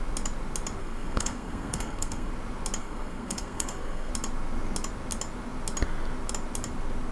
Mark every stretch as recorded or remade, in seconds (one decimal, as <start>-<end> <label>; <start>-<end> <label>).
0.0-0.8 recorded; 0.8-2.3 remade; 2.3-2.8 recorded; 2.8-4.1 remade; 4.1-7.1 recorded

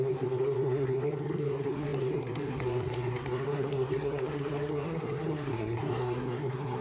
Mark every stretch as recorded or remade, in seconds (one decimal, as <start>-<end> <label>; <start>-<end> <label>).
0.0-6.8 remade